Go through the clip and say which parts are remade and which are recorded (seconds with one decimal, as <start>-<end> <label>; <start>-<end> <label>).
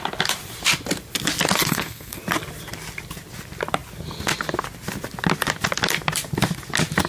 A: 0.0-1.6 recorded; 1.6-2.2 remade; 2.2-7.1 recorded